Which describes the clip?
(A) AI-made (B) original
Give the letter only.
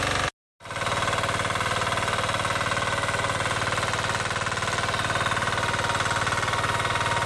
B